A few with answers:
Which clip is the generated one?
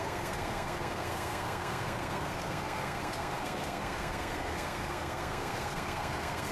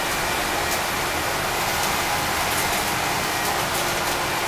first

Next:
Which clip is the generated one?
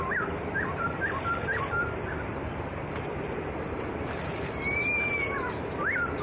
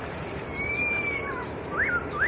first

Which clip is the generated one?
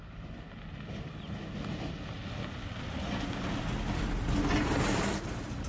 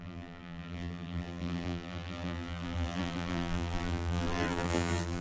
second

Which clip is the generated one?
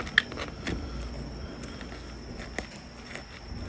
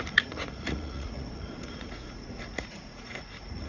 second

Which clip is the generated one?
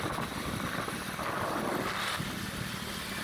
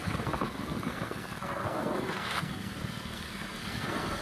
second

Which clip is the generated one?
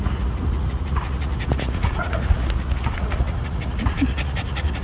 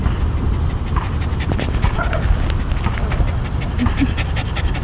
first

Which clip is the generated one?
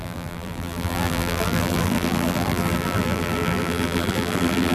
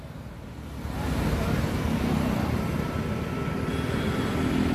first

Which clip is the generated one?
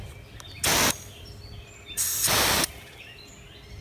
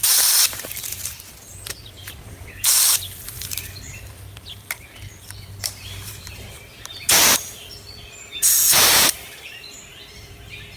second